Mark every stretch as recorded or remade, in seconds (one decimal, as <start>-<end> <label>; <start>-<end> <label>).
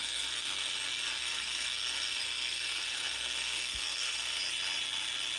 0.0-0.7 remade; 0.7-1.2 recorded; 1.2-4.4 remade; 4.4-5.4 recorded